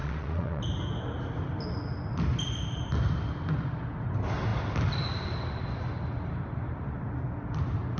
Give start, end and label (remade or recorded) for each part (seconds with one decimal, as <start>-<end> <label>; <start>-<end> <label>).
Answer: 0.0-0.6 remade; 0.6-8.0 recorded